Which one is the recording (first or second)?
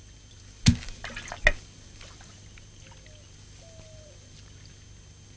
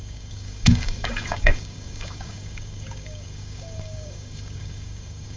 first